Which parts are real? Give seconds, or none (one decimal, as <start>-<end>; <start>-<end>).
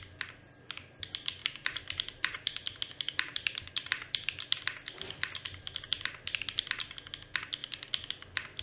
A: 0.0-1.4; 3.7-8.6